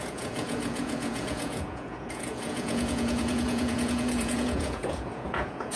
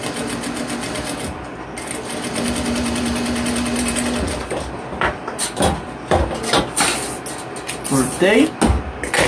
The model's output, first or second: first